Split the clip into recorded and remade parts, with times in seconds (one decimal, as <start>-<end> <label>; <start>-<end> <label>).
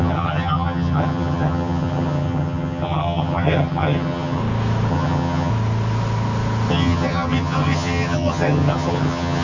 0.0-4.4 remade; 4.4-4.9 recorded; 4.9-5.5 remade; 5.5-6.7 recorded; 6.7-9.4 remade